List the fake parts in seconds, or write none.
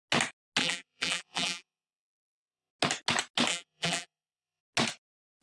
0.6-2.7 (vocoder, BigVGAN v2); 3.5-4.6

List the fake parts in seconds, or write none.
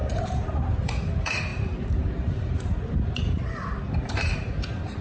0.0-5.0 (vocoder, BigVGAN v2)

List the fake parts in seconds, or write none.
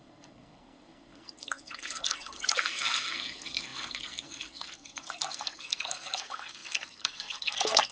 0.0-7.9 (codec, SNAC)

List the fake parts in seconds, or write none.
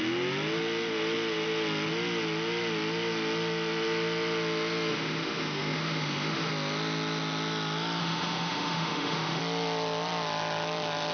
4.9-6.5 (autoencoder, DAC-VAE); 8.0-9.4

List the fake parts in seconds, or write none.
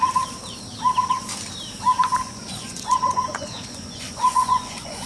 2.1-5.1 (vocoder, Vocos)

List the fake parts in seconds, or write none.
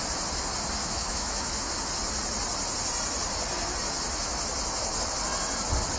0.8-1.6 (autoencoder, DAC-VAE)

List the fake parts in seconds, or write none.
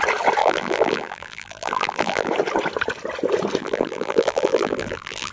0.4-2.3 (vocoder, BigVGAN v2); 3.6-5.3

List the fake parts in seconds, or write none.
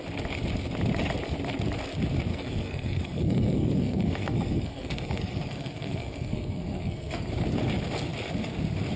2.3-7.2 (codec, SNAC)